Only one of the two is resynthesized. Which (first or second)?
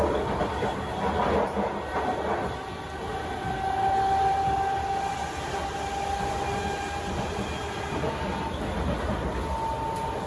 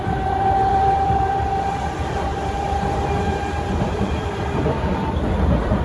second